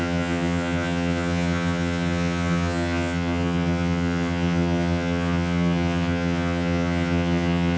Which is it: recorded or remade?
remade